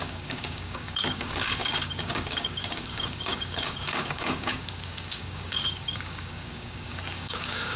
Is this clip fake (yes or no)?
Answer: yes